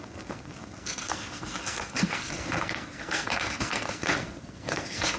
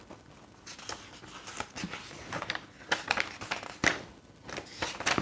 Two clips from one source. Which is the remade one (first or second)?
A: first